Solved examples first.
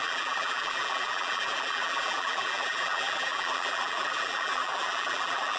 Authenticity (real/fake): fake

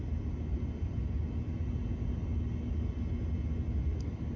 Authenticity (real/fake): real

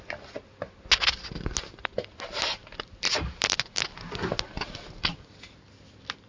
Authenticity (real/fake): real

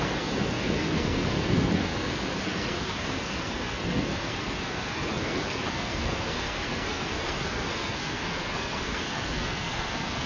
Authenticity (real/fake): fake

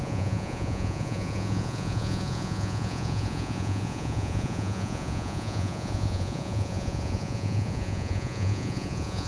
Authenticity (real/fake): fake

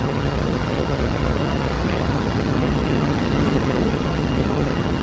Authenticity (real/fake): fake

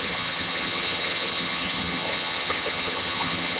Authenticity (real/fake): fake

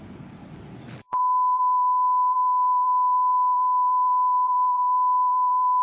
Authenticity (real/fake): fake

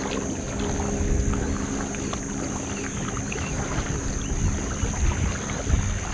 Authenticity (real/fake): real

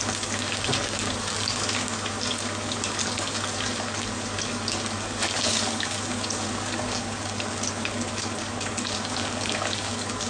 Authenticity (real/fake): fake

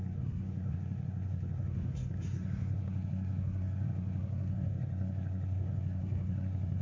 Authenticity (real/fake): fake